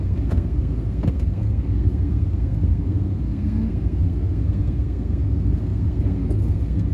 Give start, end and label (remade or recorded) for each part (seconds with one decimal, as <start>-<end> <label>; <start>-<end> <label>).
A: 0.0-6.9 remade